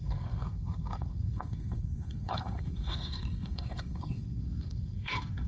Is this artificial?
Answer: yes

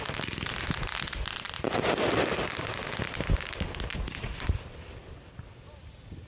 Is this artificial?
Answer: no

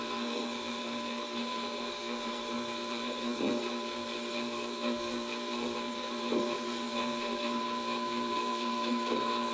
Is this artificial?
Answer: yes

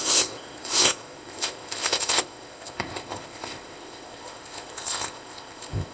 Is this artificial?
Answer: yes